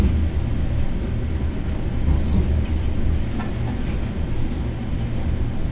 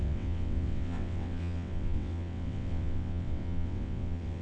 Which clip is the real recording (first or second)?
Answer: first